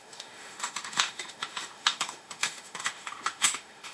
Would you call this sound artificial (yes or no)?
yes